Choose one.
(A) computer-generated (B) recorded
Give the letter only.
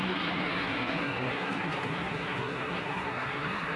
A